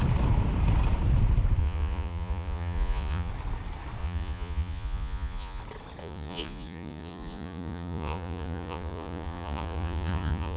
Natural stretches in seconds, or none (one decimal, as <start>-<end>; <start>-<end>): 0.0-1.6; 3.3-4.0; 5.6-6.0